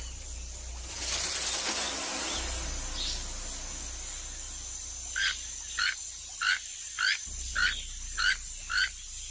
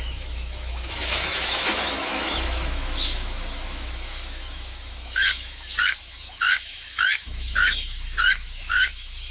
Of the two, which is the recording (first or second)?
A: first